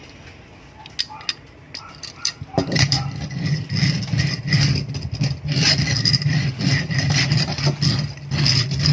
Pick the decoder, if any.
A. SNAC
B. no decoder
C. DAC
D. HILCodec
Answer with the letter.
B